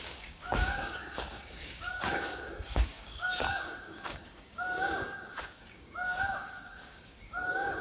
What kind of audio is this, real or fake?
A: fake